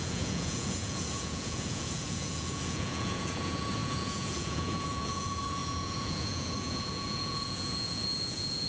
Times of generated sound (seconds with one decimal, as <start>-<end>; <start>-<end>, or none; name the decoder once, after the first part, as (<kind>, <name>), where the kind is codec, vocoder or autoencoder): 0.0-8.7 (vocoder, Vocos)